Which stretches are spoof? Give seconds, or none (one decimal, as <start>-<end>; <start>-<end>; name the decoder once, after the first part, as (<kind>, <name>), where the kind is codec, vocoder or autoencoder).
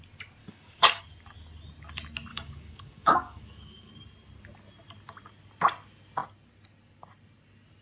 0.4-1.0 (codec, DAC); 2.3-3.9